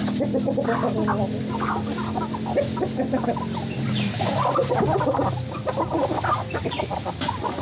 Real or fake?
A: real